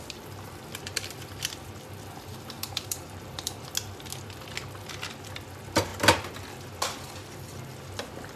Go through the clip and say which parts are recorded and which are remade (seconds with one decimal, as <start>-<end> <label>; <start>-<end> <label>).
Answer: 0.0-2.3 recorded; 2.3-3.6 remade; 3.6-8.4 recorded